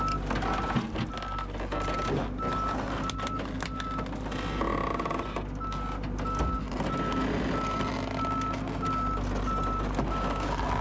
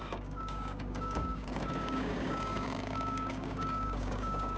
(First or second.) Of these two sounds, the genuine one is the first